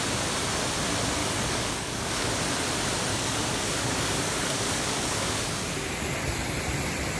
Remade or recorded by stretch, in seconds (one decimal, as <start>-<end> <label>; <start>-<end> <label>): 0.0-1.2 recorded; 1.2-2.3 remade; 2.3-3.1 recorded; 3.1-5.6 remade; 5.6-7.2 recorded